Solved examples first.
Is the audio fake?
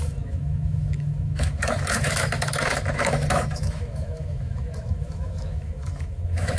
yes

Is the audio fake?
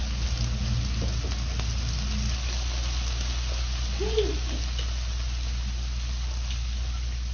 no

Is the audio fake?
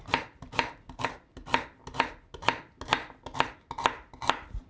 no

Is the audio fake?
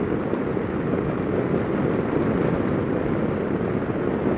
no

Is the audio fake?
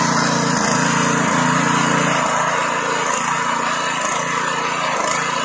no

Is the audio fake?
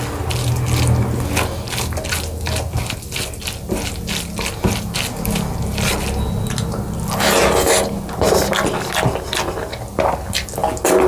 no